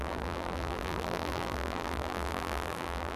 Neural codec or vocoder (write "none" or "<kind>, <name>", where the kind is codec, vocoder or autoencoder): vocoder, BigVGAN v2